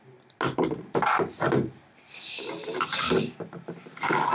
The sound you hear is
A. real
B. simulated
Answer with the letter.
A